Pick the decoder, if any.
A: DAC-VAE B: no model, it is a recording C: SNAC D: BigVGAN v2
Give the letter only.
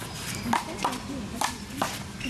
D